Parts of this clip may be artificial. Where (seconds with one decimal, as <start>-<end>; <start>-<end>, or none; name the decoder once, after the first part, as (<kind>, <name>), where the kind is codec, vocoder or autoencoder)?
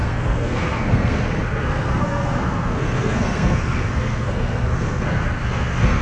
0.0-6.0 (codec, SNAC)